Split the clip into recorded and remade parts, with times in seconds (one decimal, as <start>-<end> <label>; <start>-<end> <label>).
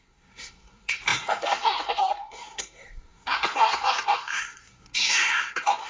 0.0-5.9 remade